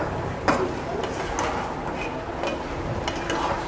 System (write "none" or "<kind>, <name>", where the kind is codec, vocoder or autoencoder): none